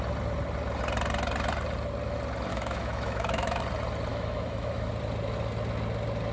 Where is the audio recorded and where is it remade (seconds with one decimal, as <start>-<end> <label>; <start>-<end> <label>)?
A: 0.0-2.5 recorded; 2.5-3.6 remade; 3.6-4.1 recorded; 4.1-4.9 remade; 4.9-6.3 recorded